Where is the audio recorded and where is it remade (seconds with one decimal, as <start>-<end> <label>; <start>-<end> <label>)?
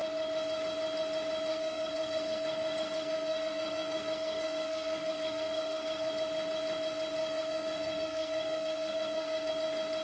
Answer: 0.0-1.5 recorded; 1.5-6.1 remade; 6.1-7.2 recorded; 7.2-9.5 remade; 9.5-10.0 recorded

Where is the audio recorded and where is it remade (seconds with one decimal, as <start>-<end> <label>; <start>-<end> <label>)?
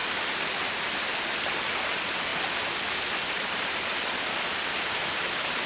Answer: 0.0-5.7 recorded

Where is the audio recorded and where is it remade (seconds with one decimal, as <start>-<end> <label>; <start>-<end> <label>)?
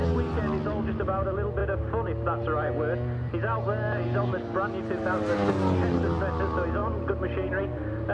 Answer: 0.0-6.8 recorded; 6.8-7.6 remade; 7.6-8.1 recorded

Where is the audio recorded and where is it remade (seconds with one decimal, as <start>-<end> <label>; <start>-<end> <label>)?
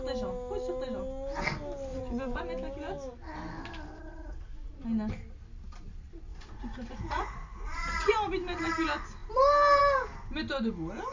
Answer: 0.0-1.9 recorded; 1.9-2.4 remade; 2.4-4.1 recorded; 4.1-4.8 remade; 4.8-6.3 recorded; 6.3-8.1 remade; 8.1-11.1 recorded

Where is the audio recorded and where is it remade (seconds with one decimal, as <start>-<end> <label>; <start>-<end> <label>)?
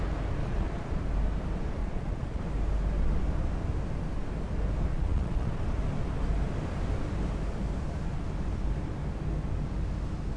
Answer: 0.0-0.4 recorded; 0.4-1.0 remade; 1.0-1.8 recorded; 1.8-2.4 remade; 2.4-4.9 recorded; 4.9-5.6 remade; 5.6-10.4 recorded